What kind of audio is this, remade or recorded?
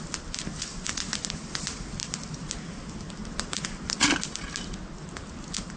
recorded